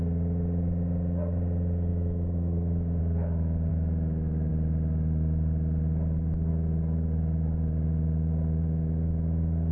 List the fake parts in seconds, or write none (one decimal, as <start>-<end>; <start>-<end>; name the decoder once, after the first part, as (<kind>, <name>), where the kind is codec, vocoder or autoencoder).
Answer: 1.9-3.0 (autoencoder, DAC-VAE); 3.7-4.5